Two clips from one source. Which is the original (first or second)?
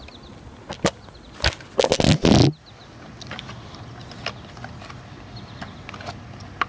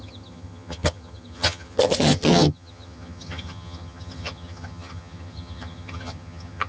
first